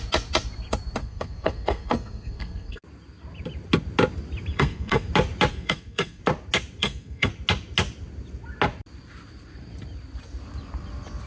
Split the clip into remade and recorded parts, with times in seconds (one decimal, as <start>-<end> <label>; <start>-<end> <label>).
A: 0.0-1.0 recorded; 1.0-2.8 remade; 2.8-4.5 recorded; 4.5-5.1 remade; 5.1-5.5 recorded; 5.5-6.2 remade; 6.2-6.8 recorded; 6.8-7.3 remade; 7.3-11.3 recorded